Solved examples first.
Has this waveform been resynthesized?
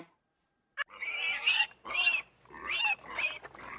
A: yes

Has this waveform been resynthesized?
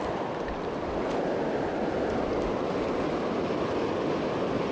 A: no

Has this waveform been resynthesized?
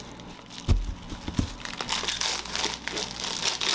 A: no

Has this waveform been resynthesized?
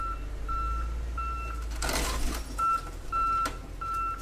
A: no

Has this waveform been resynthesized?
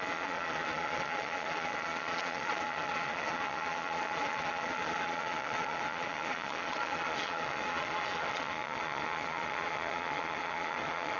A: yes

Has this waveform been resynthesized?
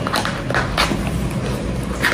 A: no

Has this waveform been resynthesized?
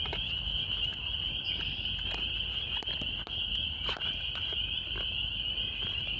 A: no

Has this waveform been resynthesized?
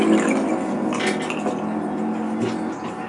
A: no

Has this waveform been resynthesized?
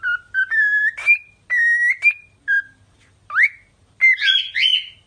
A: no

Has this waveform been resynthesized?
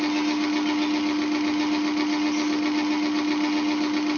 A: no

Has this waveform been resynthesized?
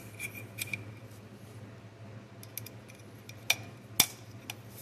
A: no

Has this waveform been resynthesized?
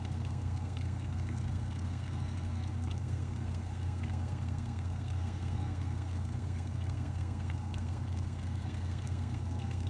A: yes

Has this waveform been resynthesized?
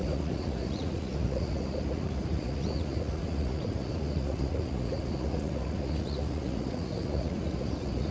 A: yes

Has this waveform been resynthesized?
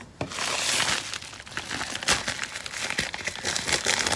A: no